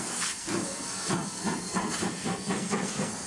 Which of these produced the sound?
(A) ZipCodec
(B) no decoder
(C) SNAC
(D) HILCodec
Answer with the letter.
C